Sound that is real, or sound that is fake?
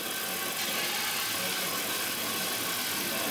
real